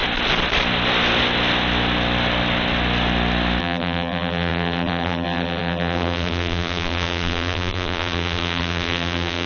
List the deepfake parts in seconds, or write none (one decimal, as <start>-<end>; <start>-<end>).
3.6-9.5